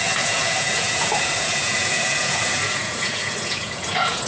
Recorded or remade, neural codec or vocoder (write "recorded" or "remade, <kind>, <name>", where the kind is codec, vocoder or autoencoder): remade, vocoder, Vocos